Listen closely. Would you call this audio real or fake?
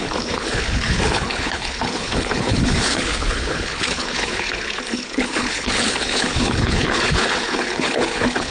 fake